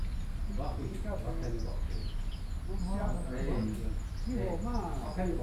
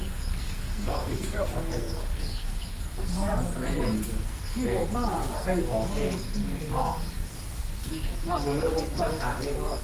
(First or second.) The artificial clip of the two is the second